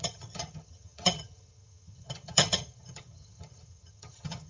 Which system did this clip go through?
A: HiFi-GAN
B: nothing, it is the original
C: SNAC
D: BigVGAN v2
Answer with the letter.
A